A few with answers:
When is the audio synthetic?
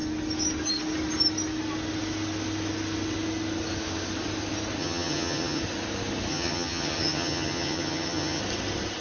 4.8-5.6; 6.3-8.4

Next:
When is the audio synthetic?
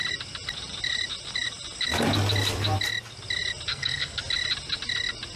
3.7-4.2